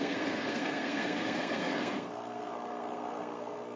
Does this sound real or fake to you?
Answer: fake